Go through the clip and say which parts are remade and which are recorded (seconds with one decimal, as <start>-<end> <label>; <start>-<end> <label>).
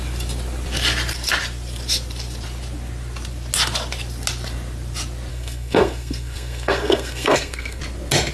0.0-5.3 recorded; 5.3-7.8 remade; 7.8-8.3 recorded